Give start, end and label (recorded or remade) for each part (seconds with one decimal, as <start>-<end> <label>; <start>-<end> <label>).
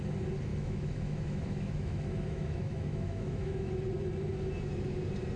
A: 0.0-0.5 recorded; 0.5-3.7 remade; 3.7-5.4 recorded